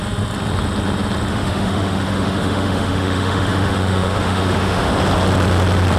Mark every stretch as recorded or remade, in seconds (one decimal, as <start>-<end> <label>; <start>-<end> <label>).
0.0-1.3 recorded; 1.3-4.9 remade; 4.9-6.0 recorded